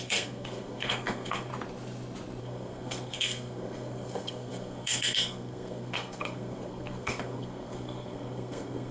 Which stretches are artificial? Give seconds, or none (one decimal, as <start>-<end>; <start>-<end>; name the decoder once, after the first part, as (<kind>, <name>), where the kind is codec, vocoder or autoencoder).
0.0-1.5 (codec, SNAC); 2.4-8.9